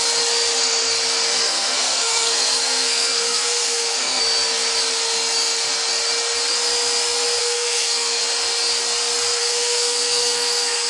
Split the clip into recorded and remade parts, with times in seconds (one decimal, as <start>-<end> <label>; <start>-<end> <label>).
0.0-1.3 recorded; 1.3-4.2 remade; 4.2-7.4 recorded; 7.4-8.2 remade; 8.2-9.4 recorded; 9.4-10.9 remade